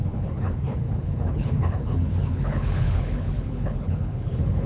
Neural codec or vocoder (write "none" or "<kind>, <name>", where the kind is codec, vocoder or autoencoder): codec, HILCodec